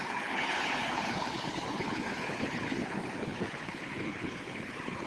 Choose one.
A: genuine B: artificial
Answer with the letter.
B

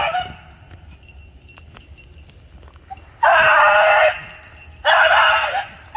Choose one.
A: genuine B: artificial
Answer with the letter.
A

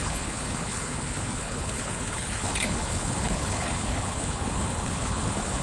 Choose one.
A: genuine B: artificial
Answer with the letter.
B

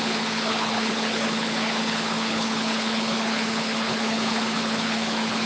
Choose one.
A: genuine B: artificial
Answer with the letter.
B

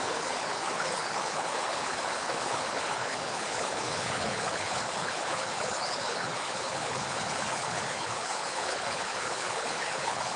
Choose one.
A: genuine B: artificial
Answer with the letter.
B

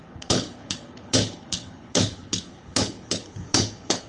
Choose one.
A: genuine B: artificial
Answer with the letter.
B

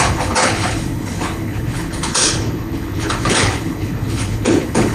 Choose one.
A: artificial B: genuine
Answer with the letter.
A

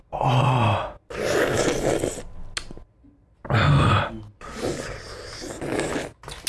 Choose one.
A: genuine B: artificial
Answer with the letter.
A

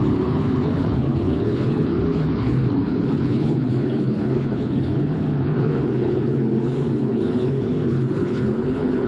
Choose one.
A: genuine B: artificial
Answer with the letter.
B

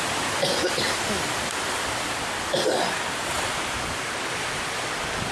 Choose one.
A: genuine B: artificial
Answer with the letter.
A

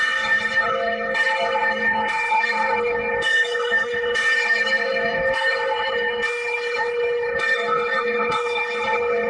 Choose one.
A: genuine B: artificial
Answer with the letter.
B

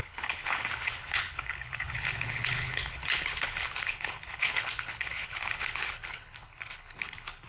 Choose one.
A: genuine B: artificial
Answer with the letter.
B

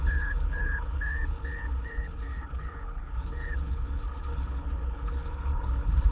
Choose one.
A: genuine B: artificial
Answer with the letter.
B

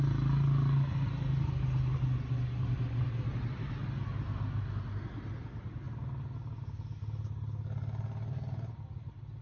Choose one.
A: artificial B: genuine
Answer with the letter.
B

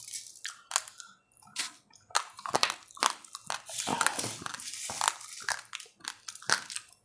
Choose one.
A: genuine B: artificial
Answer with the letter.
A